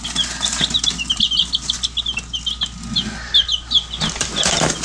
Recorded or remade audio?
recorded